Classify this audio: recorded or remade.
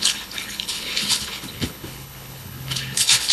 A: remade